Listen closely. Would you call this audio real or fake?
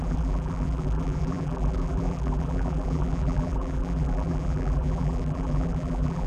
fake